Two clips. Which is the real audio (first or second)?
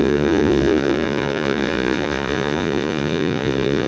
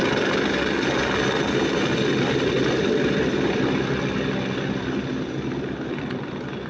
second